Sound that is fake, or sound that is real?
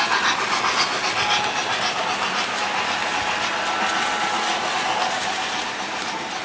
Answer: real